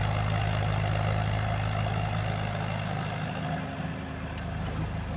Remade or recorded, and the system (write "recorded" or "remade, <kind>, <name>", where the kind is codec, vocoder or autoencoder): recorded